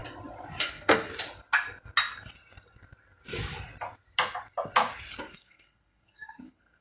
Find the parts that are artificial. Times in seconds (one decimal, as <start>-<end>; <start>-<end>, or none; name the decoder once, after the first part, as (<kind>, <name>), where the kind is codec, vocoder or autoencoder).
0.6-1.1 (codec, SNAC); 5.2-6.8